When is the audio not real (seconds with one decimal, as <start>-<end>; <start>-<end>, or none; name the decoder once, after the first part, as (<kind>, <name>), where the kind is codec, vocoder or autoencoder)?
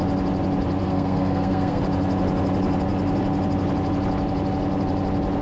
0.8-1.8 (codec, SNAC)